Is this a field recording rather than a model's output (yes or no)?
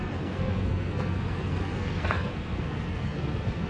no